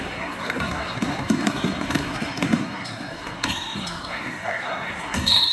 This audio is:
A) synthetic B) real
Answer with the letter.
A